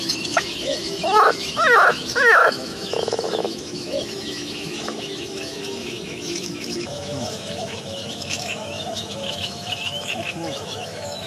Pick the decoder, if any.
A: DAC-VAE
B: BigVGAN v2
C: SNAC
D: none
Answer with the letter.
A